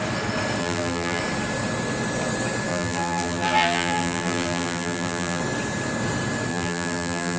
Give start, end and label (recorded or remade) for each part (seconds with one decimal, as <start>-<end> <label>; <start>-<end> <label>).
0.0-0.6 recorded; 0.6-1.2 remade; 1.2-2.7 recorded; 2.7-5.4 remade; 5.4-6.5 recorded; 6.5-7.4 remade